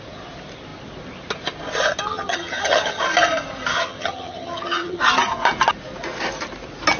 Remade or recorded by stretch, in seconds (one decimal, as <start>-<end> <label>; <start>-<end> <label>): 0.0-2.1 recorded; 2.1-3.0 remade; 3.0-3.7 recorded; 3.7-5.0 remade; 5.0-7.0 recorded